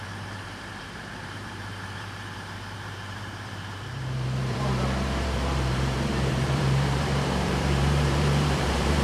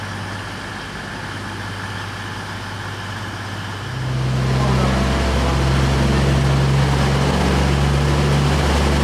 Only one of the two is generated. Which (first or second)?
first